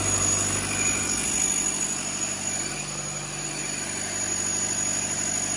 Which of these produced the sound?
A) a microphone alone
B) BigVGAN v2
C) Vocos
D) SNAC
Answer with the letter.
A